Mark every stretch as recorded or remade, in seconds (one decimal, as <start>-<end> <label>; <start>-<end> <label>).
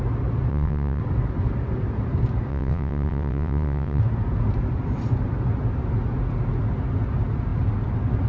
0.0-0.5 recorded; 0.5-1.0 remade; 1.0-2.5 recorded; 2.5-4.0 remade; 4.0-8.3 recorded